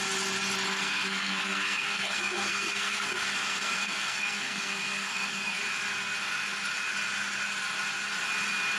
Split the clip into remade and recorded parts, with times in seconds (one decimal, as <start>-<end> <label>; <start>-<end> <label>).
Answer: 0.0-0.7 recorded; 0.7-5.6 remade; 5.6-8.8 recorded